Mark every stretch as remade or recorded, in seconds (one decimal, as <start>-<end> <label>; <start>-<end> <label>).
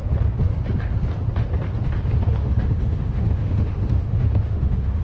0.0-2.4 recorded; 2.4-5.0 remade